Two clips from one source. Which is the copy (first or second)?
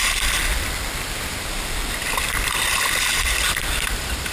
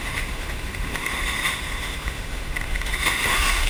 second